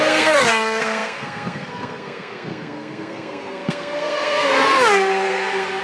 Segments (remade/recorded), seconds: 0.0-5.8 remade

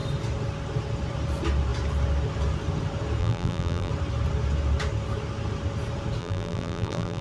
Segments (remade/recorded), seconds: 0.0-3.2 recorded; 3.2-3.9 remade; 3.9-6.2 recorded; 6.2-7.2 remade